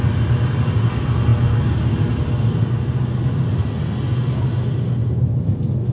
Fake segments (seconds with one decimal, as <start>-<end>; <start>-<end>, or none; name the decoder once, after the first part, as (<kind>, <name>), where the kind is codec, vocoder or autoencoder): none